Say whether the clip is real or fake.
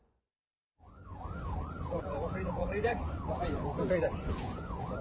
fake